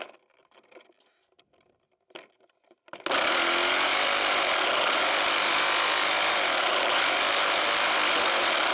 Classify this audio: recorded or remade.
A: recorded